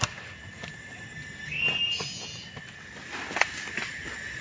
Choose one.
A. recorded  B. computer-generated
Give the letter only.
A